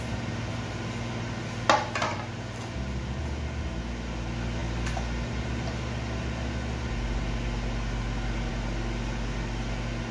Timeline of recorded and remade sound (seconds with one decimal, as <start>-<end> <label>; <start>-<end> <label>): 0.0-10.1 recorded